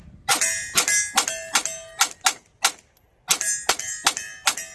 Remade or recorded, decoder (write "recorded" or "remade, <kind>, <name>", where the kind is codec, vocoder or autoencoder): recorded